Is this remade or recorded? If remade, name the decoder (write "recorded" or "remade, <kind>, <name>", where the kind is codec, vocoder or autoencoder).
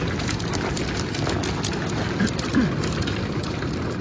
recorded